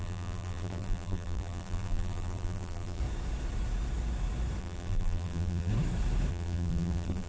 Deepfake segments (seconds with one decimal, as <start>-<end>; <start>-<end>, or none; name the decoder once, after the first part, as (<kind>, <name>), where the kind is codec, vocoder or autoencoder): 0.0-3.0 (vocoder, BigVGAN v2); 4.6-5.7; 6.3-7.3